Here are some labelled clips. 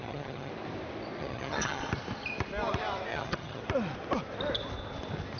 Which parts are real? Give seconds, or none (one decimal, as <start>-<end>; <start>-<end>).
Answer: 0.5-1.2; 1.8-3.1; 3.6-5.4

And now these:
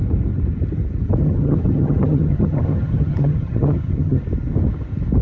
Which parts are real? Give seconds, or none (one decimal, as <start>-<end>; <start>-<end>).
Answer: 0.0-1.2; 4.2-5.2

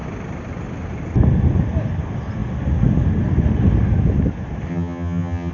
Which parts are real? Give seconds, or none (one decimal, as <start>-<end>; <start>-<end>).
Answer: 0.0-4.7

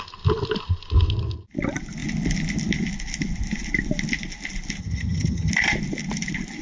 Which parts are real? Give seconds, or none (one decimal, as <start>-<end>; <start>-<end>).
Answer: 0.0-4.8; 5.5-6.6